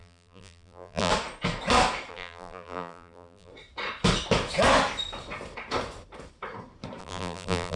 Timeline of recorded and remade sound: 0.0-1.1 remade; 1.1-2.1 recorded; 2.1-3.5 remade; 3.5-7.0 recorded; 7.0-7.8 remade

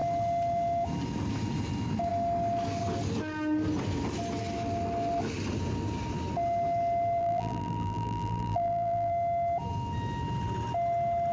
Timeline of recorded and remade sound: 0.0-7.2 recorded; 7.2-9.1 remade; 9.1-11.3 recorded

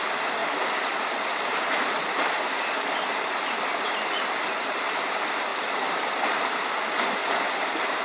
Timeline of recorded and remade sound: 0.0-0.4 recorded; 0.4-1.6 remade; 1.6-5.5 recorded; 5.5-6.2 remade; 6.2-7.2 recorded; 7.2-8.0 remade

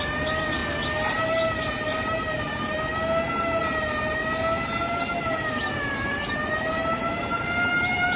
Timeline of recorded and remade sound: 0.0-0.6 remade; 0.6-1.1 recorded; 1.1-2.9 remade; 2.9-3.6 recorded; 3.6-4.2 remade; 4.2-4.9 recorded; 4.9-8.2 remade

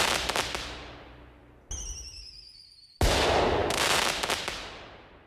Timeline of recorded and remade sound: 0.0-5.3 recorded

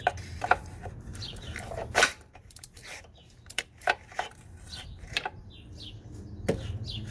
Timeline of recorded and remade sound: 0.0-1.1 recorded; 1.1-5.4 remade; 5.4-7.1 recorded

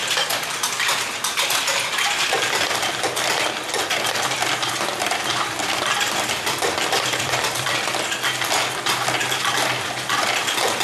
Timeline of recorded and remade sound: 0.0-3.4 remade; 3.4-3.8 recorded; 3.8-7.8 remade; 7.8-10.8 recorded